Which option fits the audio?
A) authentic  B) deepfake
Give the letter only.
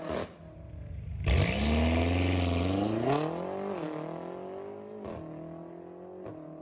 A